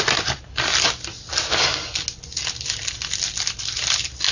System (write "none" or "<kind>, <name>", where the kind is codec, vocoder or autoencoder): none